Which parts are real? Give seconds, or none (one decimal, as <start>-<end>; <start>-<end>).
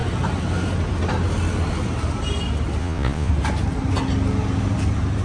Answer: 0.0-2.8; 3.3-5.2